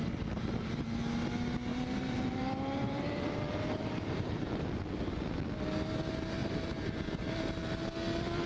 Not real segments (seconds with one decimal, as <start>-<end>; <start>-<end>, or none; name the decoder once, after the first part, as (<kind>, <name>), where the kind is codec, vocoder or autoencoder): 1.7-4.5 (vocoder, BigVGAN v2); 6.4-7.0